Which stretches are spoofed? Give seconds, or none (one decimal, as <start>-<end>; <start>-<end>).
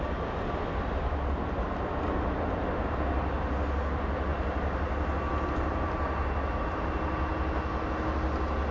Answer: none